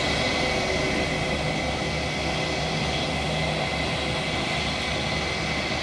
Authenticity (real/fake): real